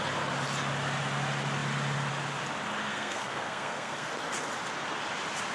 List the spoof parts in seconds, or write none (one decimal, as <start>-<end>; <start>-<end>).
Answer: 2.9-4.1

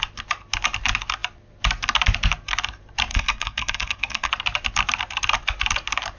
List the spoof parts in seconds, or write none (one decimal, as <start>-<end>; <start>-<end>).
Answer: 3.1-4.3

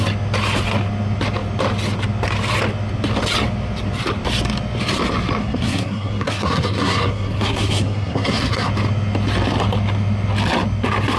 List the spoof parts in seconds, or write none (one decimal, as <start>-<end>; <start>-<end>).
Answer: 5.4-8.7

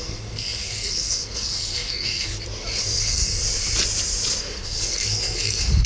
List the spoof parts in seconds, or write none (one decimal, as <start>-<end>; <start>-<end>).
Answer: 0.0-2.3; 2.8-3.4; 4.4-5.9

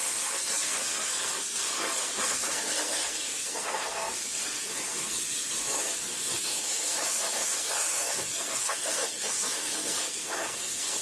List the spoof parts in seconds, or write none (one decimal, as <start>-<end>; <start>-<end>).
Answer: 0.0-11.0

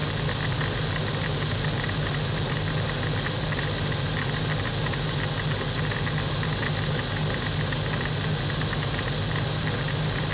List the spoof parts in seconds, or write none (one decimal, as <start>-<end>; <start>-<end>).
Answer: none

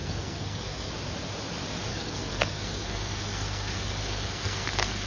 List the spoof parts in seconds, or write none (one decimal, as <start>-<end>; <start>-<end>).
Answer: 0.0-0.9; 1.9-5.1

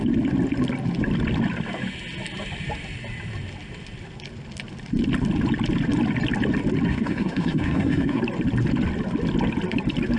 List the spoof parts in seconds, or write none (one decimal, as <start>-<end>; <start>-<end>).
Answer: 6.9-8.2